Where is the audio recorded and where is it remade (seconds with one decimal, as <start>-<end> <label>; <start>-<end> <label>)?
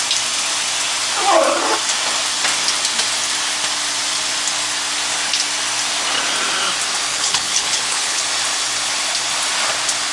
0.0-7.1 recorded; 7.1-8.2 remade; 8.2-10.1 recorded